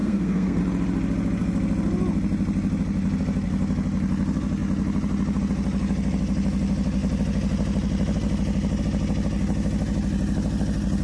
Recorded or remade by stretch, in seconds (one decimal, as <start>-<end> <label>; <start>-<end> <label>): 0.0-0.6 remade; 0.6-11.0 recorded